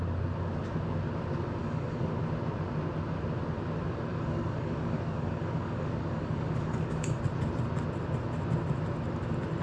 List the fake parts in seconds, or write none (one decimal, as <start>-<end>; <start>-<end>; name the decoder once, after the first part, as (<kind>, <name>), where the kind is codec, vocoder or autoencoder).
1.6-2.1 (codec, DAC); 4.1-7.2